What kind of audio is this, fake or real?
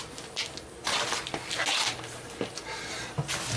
real